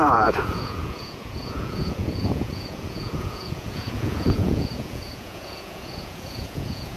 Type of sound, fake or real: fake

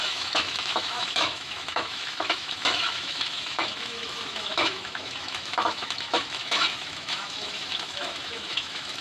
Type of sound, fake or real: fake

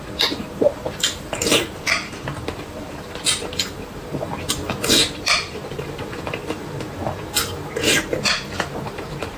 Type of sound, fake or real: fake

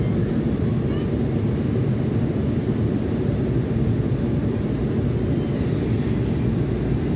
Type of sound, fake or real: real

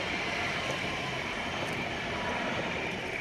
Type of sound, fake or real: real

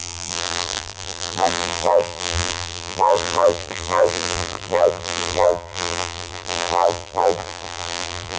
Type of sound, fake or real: fake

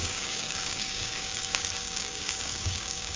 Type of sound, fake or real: fake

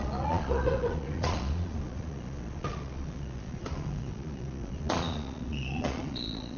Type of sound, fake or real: fake